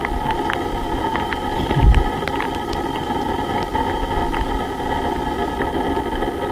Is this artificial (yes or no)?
no